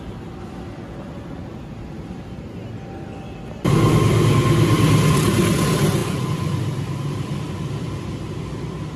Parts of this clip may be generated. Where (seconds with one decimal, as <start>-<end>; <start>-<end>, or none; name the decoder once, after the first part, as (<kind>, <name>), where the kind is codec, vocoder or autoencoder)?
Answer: none